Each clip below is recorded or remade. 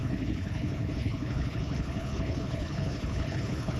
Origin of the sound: remade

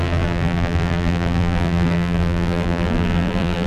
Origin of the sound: remade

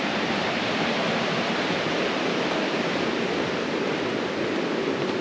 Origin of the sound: recorded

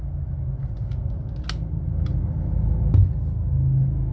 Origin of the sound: recorded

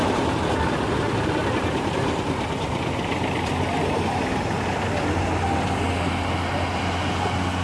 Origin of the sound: recorded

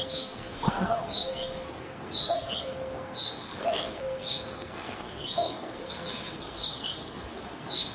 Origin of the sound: remade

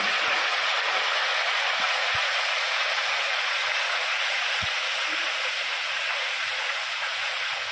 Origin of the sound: remade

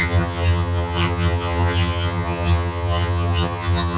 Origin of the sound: remade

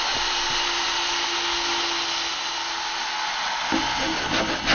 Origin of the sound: recorded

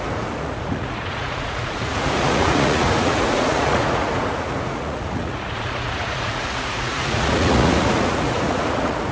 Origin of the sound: remade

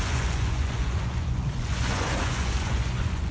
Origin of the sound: remade